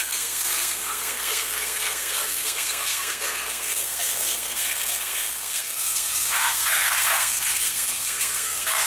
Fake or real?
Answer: fake